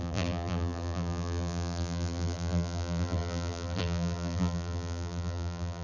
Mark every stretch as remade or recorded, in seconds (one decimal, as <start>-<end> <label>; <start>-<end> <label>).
0.0-5.8 remade

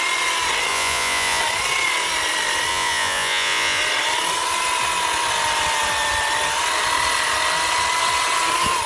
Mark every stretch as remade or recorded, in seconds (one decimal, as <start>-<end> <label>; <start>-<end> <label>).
0.0-0.7 recorded; 0.7-1.4 remade; 1.4-2.7 recorded; 2.7-3.8 remade; 3.8-8.9 recorded

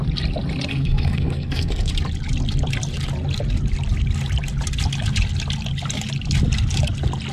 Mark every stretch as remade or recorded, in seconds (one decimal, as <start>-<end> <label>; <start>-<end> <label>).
0.0-0.7 recorded; 0.7-1.9 remade; 1.9-7.3 recorded

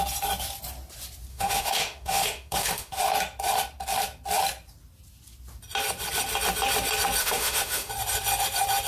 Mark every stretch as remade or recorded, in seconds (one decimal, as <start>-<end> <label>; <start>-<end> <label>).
0.0-1.3 recorded; 1.3-3.0 remade; 3.0-7.2 recorded; 7.2-7.9 remade; 7.9-8.9 recorded

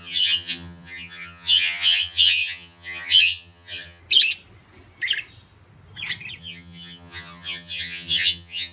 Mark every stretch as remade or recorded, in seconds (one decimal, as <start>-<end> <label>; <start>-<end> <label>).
0.0-4.0 remade; 4.0-6.4 recorded; 6.4-8.7 remade

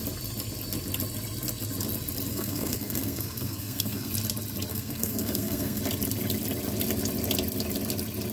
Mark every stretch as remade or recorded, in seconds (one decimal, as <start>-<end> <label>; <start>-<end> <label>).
0.0-2.3 recorded; 2.3-4.1 remade; 4.1-4.7 recorded; 4.7-5.8 remade; 5.8-8.3 recorded

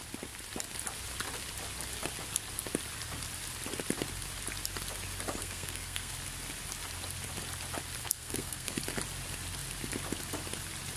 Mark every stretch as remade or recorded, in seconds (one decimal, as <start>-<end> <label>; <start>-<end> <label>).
0.0-5.4 recorded; 5.4-6.1 remade; 6.1-8.0 recorded; 8.0-8.8 remade; 8.8-11.0 recorded